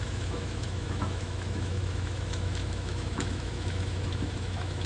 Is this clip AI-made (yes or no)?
yes